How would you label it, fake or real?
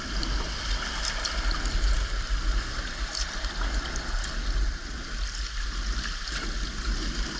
real